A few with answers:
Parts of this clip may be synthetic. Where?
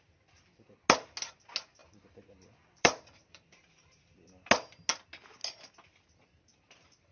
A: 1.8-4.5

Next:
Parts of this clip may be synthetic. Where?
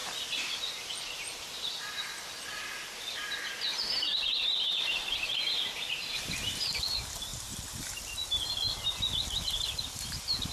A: 3.7-6.6; 7.3-8.0